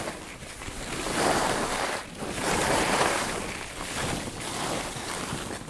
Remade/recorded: recorded